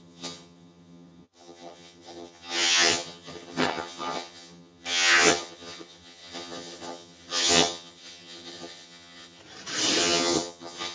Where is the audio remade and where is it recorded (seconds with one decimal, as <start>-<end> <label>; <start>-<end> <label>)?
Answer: 0.0-9.4 remade; 9.4-10.0 recorded; 10.0-10.9 remade